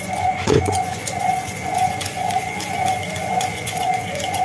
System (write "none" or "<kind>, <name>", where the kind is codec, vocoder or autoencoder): vocoder, Vocos